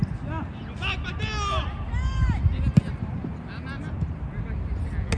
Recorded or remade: recorded